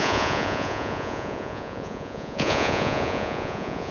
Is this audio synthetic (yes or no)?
yes